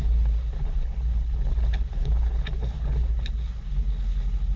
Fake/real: fake